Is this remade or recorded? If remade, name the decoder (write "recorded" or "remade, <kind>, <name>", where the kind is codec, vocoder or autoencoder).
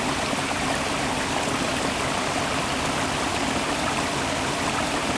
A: recorded